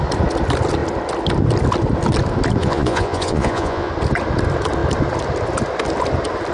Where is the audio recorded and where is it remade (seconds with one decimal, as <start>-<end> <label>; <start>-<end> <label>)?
0.0-2.6 recorded; 2.6-3.9 remade; 3.9-6.5 recorded